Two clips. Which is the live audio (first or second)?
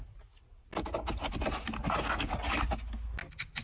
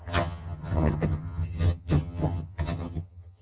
first